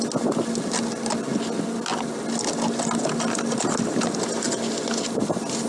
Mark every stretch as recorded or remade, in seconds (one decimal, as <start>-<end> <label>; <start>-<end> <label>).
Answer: 0.0-5.7 recorded